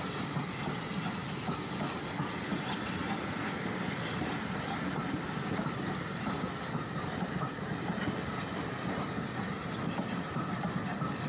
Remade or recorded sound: recorded